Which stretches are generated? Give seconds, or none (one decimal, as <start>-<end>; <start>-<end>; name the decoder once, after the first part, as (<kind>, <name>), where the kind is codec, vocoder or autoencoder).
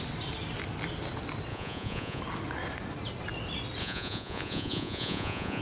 1.5-2.2 (vocoder, Vocos); 3.8-5.6